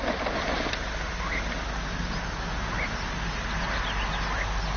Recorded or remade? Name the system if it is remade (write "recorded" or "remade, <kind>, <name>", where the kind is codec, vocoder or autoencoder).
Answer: recorded